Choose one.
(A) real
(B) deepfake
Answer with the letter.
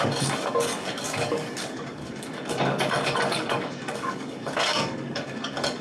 B